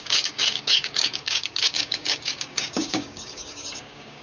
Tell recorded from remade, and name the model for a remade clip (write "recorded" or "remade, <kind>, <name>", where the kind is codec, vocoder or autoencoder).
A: remade, codec, DAC